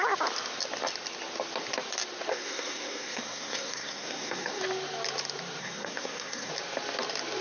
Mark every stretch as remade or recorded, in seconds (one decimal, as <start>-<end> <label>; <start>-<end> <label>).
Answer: 0.0-2.3 recorded; 2.3-4.6 remade; 4.6-5.6 recorded; 5.6-6.5 remade; 6.5-7.4 recorded